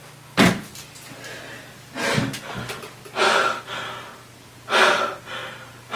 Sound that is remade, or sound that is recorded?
recorded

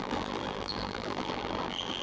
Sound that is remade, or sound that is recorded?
remade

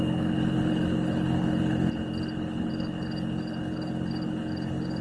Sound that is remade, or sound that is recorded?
remade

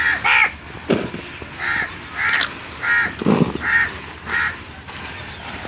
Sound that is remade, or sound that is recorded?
recorded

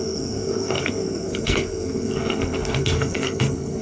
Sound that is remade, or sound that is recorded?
remade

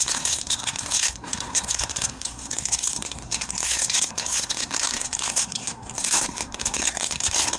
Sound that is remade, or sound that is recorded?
remade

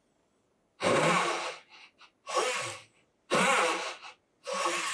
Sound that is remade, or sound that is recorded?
recorded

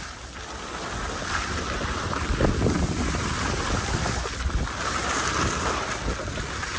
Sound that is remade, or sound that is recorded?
recorded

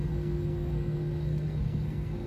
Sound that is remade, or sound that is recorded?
remade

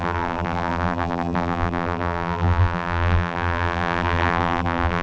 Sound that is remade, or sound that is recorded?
remade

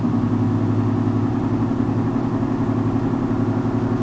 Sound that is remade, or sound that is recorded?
recorded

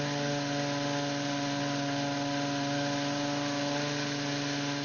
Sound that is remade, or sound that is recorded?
recorded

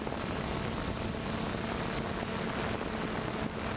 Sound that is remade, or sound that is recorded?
recorded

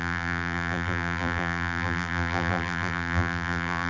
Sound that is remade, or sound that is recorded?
remade